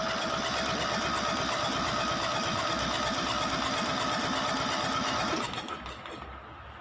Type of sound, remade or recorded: recorded